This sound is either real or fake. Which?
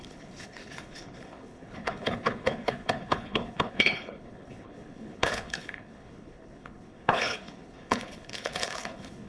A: fake